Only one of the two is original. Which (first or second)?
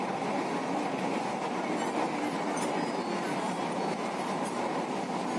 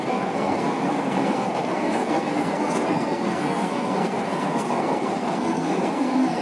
first